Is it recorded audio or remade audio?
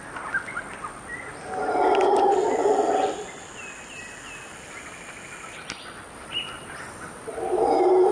recorded